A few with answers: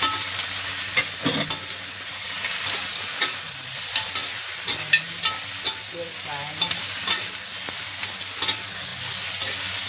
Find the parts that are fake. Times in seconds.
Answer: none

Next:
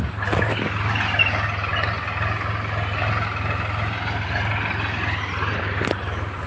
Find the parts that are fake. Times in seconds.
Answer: none